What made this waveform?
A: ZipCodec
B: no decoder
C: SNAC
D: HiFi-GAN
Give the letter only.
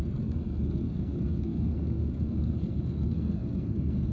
C